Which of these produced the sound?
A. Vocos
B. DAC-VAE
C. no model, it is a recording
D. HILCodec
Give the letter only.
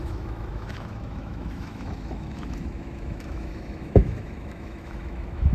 B